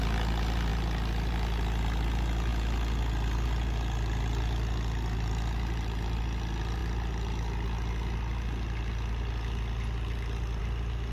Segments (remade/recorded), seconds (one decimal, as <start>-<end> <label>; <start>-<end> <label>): 0.0-2.5 recorded; 2.5-6.2 remade; 6.2-11.1 recorded